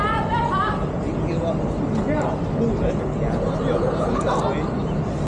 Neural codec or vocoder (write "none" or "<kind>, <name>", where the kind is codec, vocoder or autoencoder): none